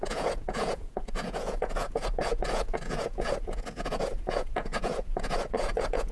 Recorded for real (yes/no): no